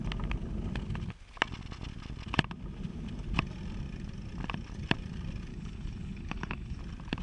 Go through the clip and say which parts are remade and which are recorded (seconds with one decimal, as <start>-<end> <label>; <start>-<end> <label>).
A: 0.0-5.5 recorded; 5.5-6.8 remade; 6.8-7.2 recorded